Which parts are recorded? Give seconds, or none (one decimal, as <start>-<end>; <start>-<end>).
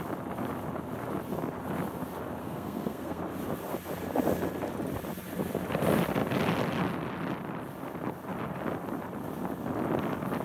0.0-2.4; 3.2-10.4